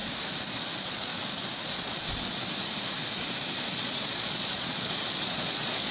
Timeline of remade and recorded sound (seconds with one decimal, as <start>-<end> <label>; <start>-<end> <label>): 0.0-0.7 recorded; 0.7-1.1 remade; 1.1-1.6 recorded; 1.6-2.0 remade; 2.0-3.8 recorded; 3.8-5.9 remade

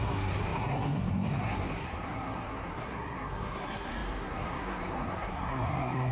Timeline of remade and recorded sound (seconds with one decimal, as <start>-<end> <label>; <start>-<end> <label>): 0.0-6.1 remade

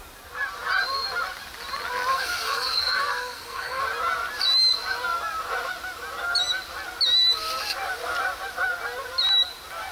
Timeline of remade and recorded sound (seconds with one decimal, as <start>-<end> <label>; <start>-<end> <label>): 0.0-2.1 recorded; 2.1-3.8 remade; 3.8-9.9 recorded

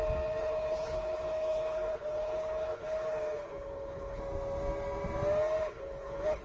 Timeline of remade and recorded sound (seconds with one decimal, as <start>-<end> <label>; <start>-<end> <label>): 0.0-0.4 recorded; 0.4-4.2 remade; 4.2-5.6 recorded; 5.6-6.4 remade

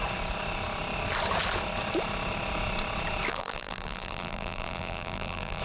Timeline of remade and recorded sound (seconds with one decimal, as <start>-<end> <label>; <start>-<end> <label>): 0.0-3.3 recorded; 3.3-5.6 remade

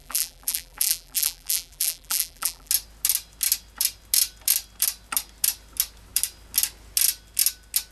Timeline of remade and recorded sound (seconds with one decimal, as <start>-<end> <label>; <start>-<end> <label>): 0.0-2.7 remade; 2.7-7.9 recorded

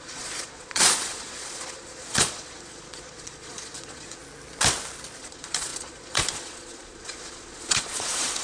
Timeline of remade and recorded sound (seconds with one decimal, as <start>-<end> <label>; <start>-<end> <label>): 0.0-4.2 remade; 4.2-5.2 recorded; 5.2-8.4 remade